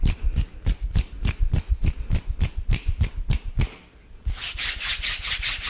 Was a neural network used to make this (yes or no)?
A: no